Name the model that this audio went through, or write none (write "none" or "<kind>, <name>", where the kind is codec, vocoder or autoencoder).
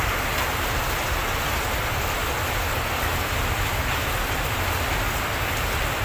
none